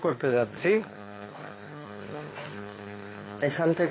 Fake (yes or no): yes